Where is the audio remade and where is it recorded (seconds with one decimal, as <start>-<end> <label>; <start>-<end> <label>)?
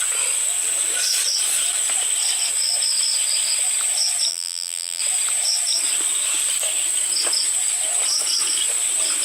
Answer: 0.0-4.3 recorded; 4.3-5.0 remade; 5.0-9.2 recorded